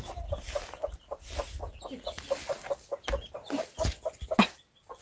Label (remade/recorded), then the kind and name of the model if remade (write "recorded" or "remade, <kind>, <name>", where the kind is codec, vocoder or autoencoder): recorded